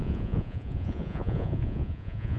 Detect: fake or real fake